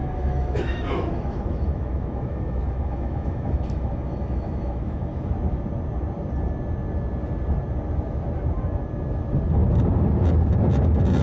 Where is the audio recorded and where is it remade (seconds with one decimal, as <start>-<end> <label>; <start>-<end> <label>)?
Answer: 0.0-5.3 remade; 5.3-11.2 recorded